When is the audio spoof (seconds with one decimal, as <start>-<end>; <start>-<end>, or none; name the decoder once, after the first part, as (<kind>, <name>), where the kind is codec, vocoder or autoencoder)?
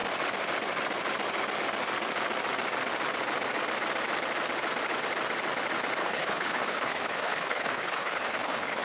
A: 6.0-8.8 (codec, HILCodec)